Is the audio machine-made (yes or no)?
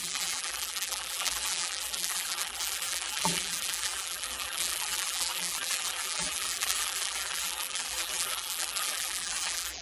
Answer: yes